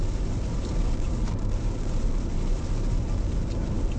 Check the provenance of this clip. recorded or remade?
remade